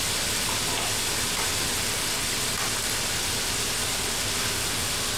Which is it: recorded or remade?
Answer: recorded